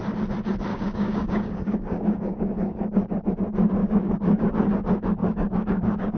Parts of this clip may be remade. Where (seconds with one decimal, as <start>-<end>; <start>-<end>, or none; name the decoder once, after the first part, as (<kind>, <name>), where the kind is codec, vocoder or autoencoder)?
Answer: 0.7-3.3 (codec, DAC); 3.8-4.5; 5.2-6.2